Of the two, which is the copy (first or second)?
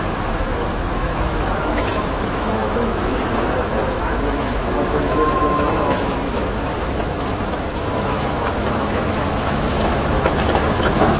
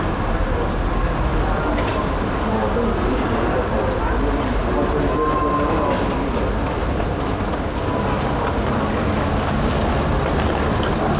first